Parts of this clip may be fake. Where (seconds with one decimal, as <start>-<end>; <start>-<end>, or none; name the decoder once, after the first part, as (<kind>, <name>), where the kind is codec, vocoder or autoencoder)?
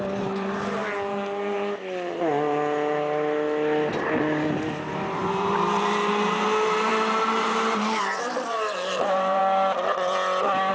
0.0-0.8 (vocoder, BigVGAN v2); 4.9-9.4